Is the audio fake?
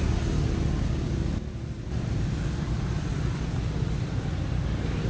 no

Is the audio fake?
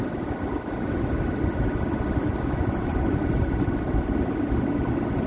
no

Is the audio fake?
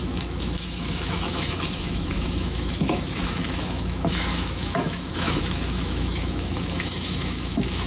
yes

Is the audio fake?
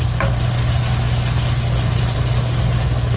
no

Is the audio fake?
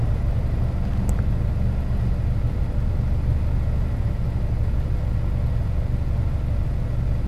no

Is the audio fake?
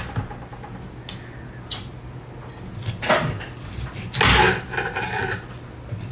no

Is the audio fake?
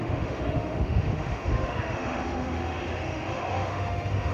yes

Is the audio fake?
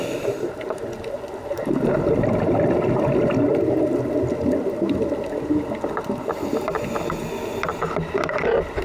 no